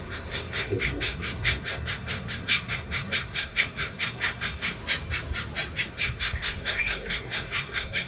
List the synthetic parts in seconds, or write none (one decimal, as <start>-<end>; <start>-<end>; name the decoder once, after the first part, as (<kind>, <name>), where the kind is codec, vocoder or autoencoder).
0.0-4.8 (codec, SNAC); 5.9-8.1